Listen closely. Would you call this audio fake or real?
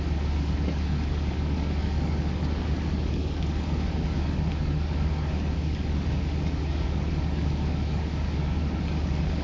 fake